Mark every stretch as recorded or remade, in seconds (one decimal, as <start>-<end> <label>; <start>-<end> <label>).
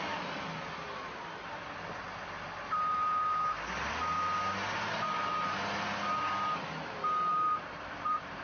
0.0-7.3 recorded; 7.3-8.4 remade